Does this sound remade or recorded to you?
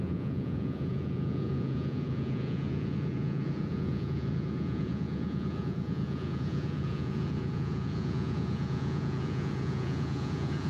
remade